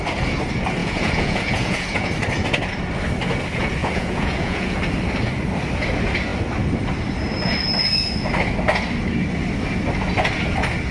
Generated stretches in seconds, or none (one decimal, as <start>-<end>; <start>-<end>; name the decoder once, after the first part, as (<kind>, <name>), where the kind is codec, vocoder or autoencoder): 0.8-2.1 (vocoder, Vocos); 3.8-4.8